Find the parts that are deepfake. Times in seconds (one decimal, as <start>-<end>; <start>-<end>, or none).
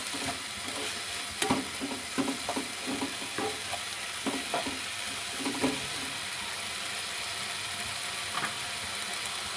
none